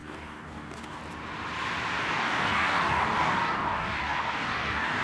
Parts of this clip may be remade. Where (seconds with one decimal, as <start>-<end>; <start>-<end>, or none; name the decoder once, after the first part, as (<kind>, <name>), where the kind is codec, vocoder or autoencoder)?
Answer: 0.0-1.0 (codec, DAC); 2.0-5.0